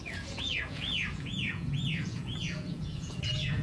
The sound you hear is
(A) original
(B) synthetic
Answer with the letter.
B